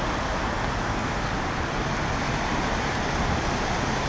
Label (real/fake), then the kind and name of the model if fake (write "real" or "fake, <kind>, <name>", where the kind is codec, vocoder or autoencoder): real